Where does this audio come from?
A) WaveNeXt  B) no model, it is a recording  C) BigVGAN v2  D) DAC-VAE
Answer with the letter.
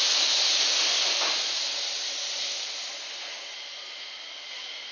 B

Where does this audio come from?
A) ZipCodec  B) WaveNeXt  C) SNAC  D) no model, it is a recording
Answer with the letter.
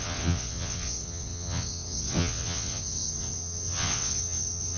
B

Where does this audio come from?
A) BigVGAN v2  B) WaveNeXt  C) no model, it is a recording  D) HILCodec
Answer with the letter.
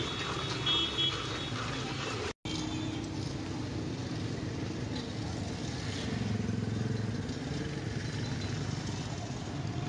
C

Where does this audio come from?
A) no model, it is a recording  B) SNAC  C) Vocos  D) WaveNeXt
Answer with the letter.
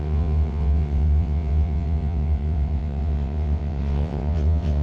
D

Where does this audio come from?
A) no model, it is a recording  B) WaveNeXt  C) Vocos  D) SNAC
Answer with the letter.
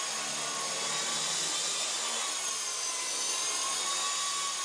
A